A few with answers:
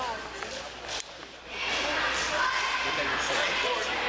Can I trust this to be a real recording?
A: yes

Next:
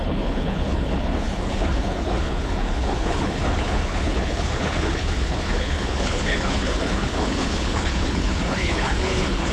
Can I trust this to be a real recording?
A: no